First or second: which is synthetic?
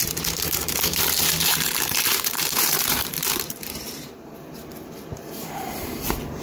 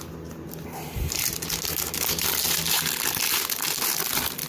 first